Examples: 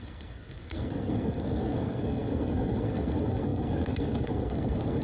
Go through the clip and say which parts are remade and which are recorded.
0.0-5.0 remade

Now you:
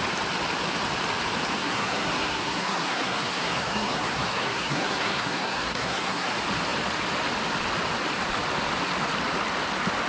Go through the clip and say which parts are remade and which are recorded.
0.0-1.6 recorded; 1.6-6.3 remade; 6.3-10.1 recorded

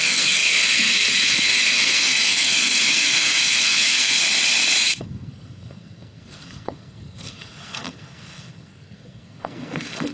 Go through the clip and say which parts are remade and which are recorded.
0.0-4.2 remade; 4.2-4.8 recorded; 4.8-10.1 remade

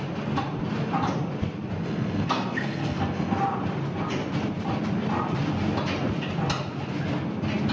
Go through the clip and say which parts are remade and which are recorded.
0.0-1.8 recorded; 1.8-3.4 remade; 3.4-7.7 recorded

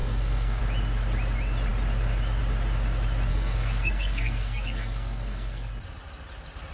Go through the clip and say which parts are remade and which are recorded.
0.0-0.6 remade; 0.6-3.3 recorded; 3.3-5.7 remade; 5.7-6.7 recorded

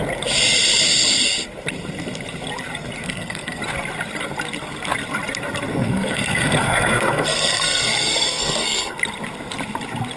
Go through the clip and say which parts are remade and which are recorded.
0.0-3.0 recorded; 3.0-3.6 remade; 3.6-5.7 recorded; 5.7-9.0 remade; 9.0-10.2 recorded

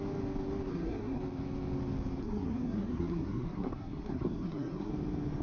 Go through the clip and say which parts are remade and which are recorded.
0.0-0.7 recorded; 0.7-1.2 remade; 1.2-2.2 recorded; 2.2-4.9 remade; 4.9-5.4 recorded

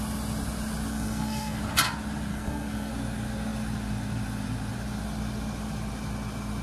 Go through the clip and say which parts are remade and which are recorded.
0.0-0.9 recorded; 0.9-1.6 remade; 1.6-2.3 recorded; 2.3-2.9 remade; 2.9-6.6 recorded